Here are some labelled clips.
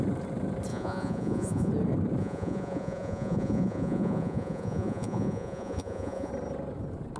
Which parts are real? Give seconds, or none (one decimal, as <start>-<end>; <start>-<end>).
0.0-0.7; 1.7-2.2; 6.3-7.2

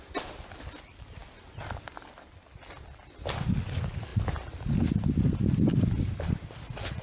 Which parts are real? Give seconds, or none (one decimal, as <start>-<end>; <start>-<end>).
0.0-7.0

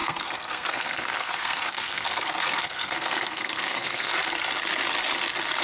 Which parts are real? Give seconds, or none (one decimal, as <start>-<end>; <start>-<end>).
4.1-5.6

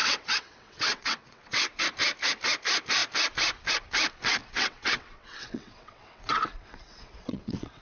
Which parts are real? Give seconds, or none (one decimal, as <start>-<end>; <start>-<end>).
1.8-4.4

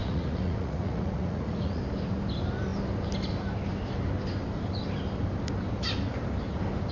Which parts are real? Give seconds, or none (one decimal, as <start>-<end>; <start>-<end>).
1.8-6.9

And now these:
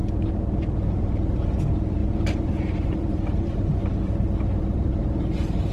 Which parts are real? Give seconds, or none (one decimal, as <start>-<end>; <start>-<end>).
0.0-2.0

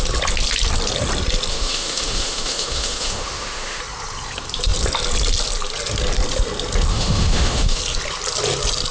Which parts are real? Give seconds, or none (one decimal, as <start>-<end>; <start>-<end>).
0.0-1.5; 3.8-6.9; 7.8-8.9